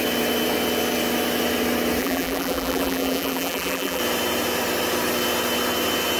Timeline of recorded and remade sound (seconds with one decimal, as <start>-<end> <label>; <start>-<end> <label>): 0.0-2.0 recorded; 2.0-4.0 remade; 4.0-6.2 recorded